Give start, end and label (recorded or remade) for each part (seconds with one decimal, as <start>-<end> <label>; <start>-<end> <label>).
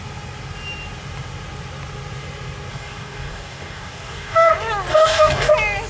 0.0-2.7 recorded; 2.7-4.5 remade; 4.5-4.9 recorded; 4.9-5.5 remade; 5.5-5.9 recorded